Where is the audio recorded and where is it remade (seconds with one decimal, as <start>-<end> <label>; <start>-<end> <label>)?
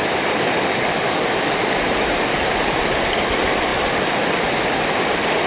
0.0-2.1 recorded; 2.1-2.9 remade; 2.9-5.5 recorded